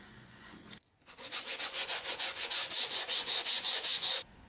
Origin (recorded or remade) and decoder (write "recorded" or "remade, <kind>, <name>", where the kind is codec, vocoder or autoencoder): remade, vocoder, Vocos